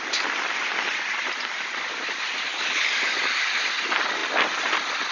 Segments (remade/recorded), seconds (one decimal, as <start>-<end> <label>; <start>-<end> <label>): 0.0-2.5 recorded; 2.5-3.5 remade; 3.5-5.1 recorded